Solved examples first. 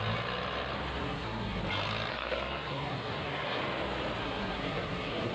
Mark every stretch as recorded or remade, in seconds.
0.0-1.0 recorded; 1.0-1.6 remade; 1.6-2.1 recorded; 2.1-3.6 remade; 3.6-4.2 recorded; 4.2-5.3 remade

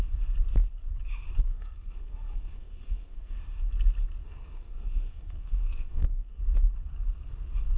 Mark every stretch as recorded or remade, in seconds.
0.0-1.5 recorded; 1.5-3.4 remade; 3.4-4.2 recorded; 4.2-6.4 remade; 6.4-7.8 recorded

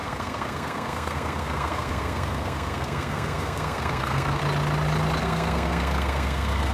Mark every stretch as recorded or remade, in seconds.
0.0-4.4 remade; 4.4-5.2 recorded; 5.2-6.7 remade

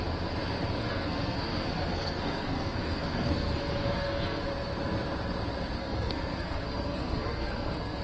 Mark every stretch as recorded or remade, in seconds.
0.0-0.8 recorded; 0.8-4.4 remade; 4.4-5.8 recorded; 5.8-8.0 remade

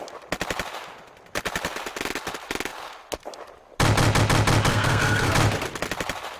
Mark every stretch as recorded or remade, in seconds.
0.0-4.7 recorded; 4.7-5.3 remade; 5.3-6.4 recorded